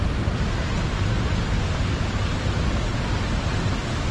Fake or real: real